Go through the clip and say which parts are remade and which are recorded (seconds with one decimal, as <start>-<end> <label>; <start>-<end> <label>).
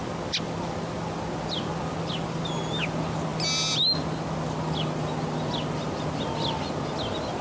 0.0-7.4 recorded